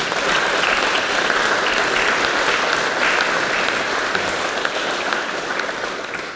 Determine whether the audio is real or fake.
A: real